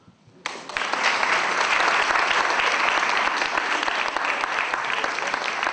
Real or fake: real